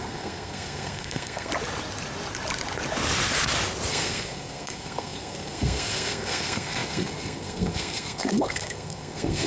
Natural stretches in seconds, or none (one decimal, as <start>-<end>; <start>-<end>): 1.5-3.9